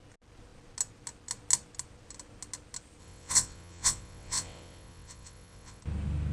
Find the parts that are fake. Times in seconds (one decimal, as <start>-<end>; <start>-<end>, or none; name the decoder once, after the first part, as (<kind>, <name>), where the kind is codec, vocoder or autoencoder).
3.0-5.8 (vocoder, WaveNeXt)